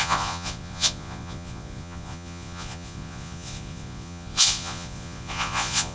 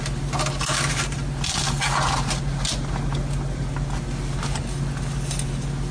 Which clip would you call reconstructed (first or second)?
first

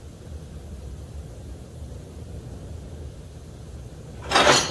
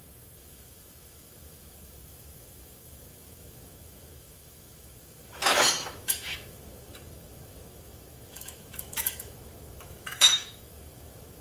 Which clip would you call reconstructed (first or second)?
second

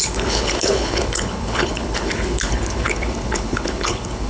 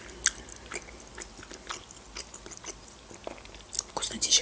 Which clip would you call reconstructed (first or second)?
first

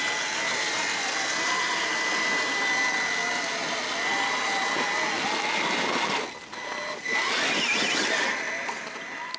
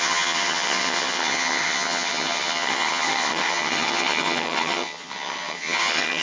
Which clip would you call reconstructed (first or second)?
second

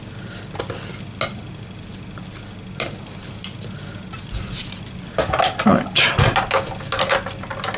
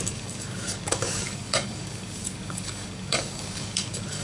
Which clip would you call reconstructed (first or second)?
second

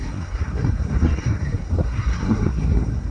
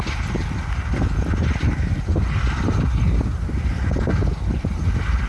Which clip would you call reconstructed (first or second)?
first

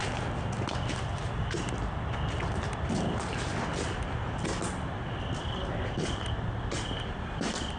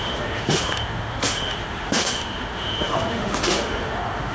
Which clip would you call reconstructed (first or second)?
second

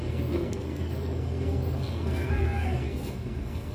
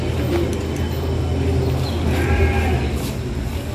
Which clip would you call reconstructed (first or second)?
first